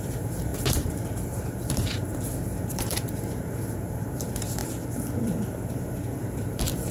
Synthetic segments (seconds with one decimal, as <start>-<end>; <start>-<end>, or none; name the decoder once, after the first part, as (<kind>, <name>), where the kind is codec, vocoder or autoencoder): 0.0-4.6 (vocoder, BigVGAN v2); 5.2-6.9